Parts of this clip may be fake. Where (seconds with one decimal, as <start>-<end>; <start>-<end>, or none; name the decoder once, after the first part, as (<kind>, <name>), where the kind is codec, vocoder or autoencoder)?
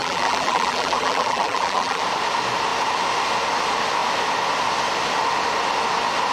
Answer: 0.0-2.0 (vocoder, BigVGAN v2)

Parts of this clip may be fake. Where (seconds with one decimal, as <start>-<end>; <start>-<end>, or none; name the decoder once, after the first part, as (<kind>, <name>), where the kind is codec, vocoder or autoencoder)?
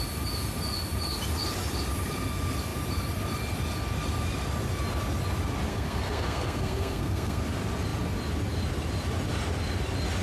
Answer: 5.7-7.4 (codec, SNAC)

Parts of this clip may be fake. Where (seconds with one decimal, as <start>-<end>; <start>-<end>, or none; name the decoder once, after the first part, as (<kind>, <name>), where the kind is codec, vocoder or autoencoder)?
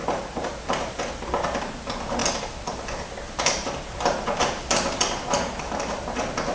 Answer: none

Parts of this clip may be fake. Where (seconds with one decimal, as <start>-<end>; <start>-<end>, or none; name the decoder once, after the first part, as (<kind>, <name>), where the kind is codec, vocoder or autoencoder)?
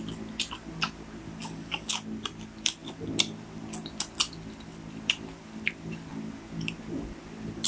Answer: 1.4-1.9 (codec, DAC)